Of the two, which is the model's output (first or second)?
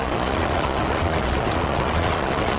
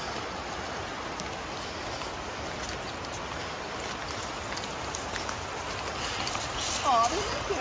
first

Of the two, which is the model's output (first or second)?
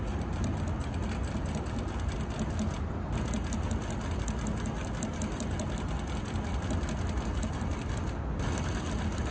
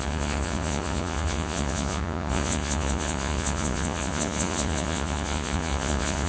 second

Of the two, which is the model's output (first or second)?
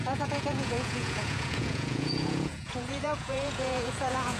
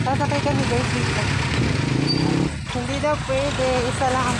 first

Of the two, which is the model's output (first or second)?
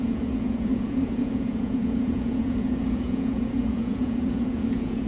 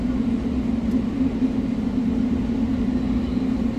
first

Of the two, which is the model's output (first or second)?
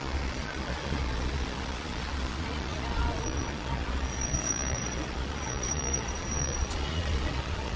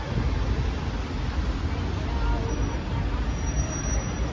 first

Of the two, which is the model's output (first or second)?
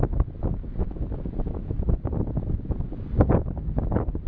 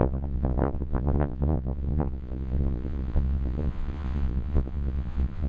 second